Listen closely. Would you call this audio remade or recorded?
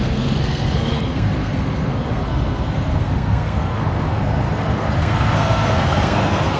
remade